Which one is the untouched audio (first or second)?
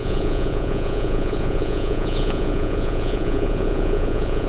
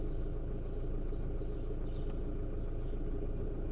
second